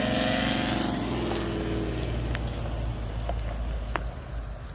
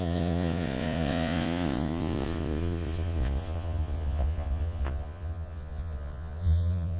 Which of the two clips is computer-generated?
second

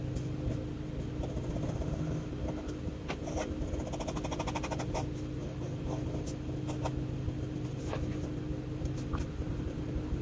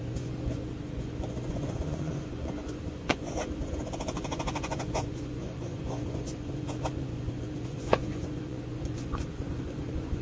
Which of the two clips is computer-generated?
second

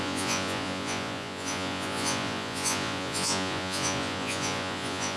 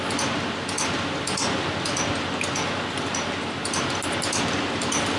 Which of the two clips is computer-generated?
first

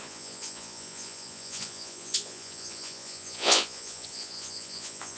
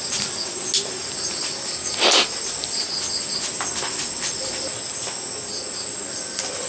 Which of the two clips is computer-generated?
first